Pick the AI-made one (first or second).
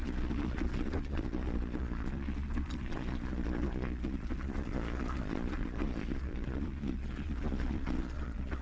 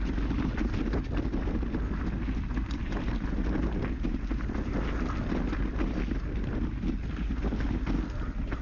first